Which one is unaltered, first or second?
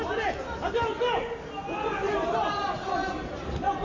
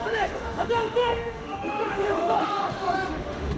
first